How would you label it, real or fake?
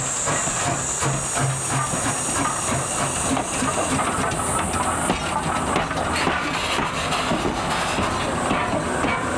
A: real